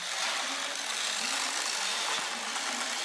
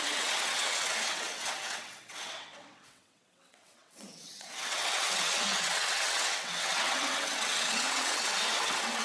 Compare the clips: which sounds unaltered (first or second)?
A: first